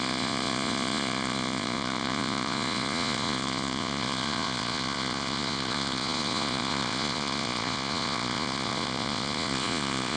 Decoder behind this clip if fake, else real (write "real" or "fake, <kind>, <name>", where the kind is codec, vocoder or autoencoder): fake, vocoder, Vocos